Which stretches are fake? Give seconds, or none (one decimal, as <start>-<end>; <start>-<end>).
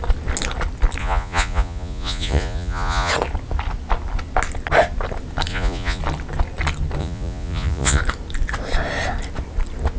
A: 1.0-3.1; 5.5-6.0; 7.0-8.0